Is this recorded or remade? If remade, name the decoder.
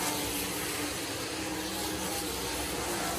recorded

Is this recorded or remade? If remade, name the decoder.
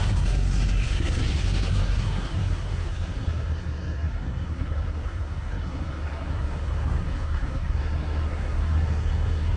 remade, codec, SNAC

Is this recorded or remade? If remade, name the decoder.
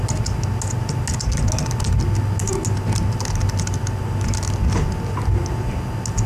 recorded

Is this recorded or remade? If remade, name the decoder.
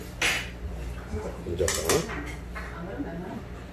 recorded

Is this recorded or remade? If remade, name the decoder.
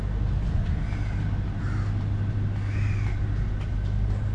recorded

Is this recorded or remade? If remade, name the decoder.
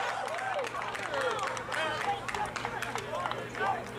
recorded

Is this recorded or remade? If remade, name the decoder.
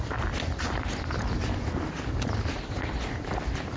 recorded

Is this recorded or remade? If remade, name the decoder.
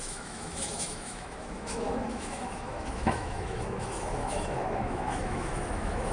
remade, autoencoder, DAC-VAE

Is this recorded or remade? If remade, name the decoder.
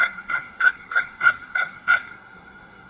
remade, codec, SNAC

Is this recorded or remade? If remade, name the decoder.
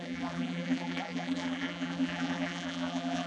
remade, vocoder, BigVGAN v2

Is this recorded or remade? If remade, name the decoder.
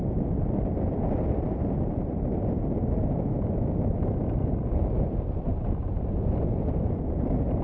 recorded